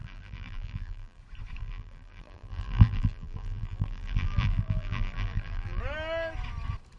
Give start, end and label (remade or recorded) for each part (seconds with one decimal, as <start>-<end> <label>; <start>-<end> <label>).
0.0-1.2 remade; 1.2-1.6 recorded; 1.6-5.8 remade; 5.8-7.0 recorded